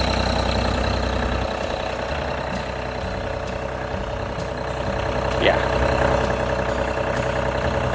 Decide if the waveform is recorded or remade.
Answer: recorded